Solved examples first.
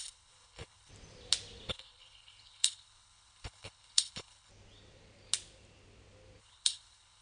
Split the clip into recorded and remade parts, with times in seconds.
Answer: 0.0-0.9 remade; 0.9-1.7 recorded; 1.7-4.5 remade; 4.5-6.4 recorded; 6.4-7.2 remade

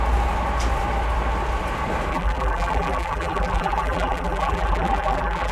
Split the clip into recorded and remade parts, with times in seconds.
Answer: 0.0-2.1 recorded; 2.1-5.5 remade

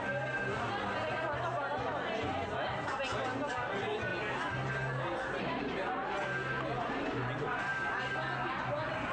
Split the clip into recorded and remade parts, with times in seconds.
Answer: 0.0-9.1 recorded

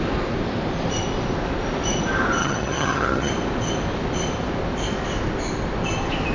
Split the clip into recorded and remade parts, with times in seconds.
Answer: 0.0-2.4 recorded; 2.4-3.3 remade; 3.3-6.3 recorded

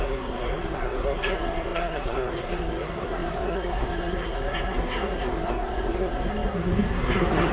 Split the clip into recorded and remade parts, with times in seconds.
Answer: 0.0-7.5 remade

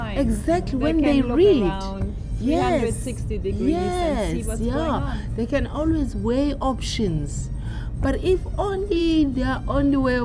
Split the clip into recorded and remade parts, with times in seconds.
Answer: 0.0-10.2 recorded

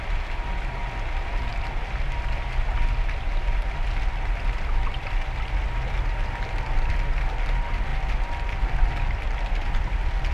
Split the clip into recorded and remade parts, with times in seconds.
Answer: 0.0-10.3 recorded

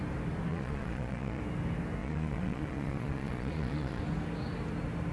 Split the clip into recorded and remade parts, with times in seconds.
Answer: 0.0-0.5 recorded; 0.5-1.4 remade; 1.4-2.0 recorded; 2.0-4.0 remade; 4.0-5.1 recorded